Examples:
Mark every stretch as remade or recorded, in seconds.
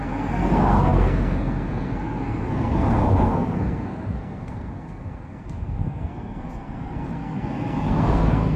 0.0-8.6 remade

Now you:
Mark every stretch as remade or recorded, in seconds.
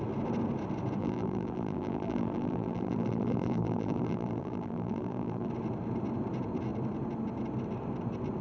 0.0-1.0 recorded; 1.0-5.5 remade; 5.5-8.4 recorded